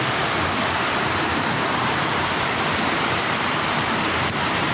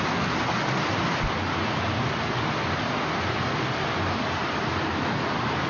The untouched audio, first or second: second